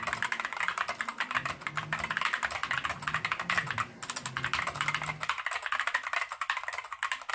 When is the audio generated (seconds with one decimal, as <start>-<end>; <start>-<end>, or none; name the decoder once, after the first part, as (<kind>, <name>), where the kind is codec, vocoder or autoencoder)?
none